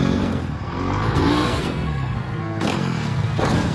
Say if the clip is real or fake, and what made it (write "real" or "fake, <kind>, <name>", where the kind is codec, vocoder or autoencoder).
fake, codec, SNAC